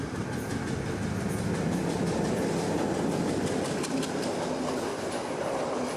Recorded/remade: recorded